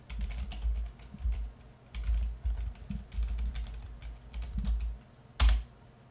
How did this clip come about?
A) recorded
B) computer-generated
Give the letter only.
A